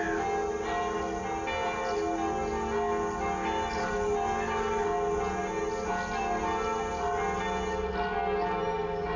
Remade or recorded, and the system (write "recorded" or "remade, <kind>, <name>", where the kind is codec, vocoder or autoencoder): recorded